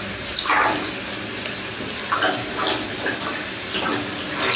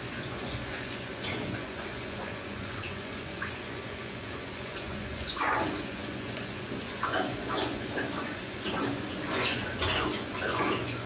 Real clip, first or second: first